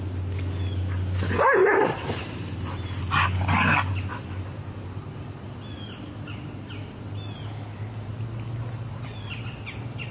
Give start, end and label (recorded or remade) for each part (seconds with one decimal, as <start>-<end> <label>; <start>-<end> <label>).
0.0-1.6 recorded; 1.6-2.7 remade; 2.7-10.1 recorded